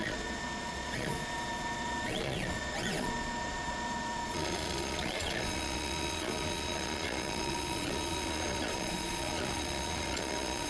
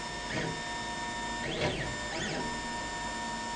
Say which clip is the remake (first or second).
first